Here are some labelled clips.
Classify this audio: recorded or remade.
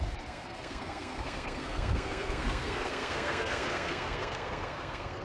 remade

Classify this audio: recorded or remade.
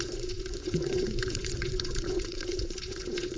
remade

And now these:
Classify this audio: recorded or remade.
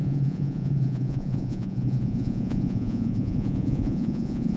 remade